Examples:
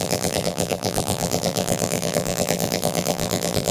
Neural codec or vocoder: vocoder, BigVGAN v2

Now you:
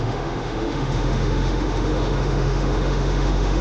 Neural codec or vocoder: autoencoder, DAC-VAE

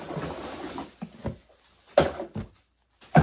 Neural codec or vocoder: none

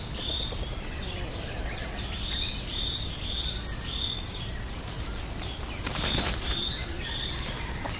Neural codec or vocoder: none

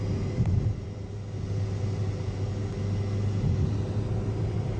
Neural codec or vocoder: none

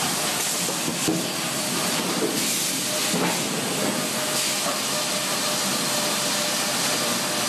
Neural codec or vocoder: none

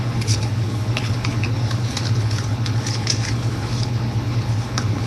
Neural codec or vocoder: codec, HILCodec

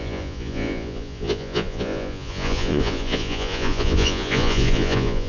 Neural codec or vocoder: vocoder, Vocos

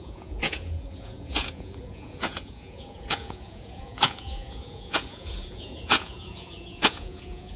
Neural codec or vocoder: vocoder, Vocos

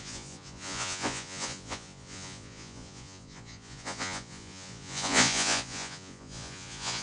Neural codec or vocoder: vocoder, Vocos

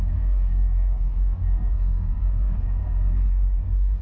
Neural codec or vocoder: codec, SNAC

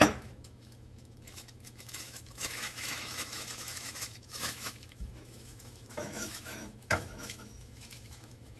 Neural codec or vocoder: autoencoder, DAC-VAE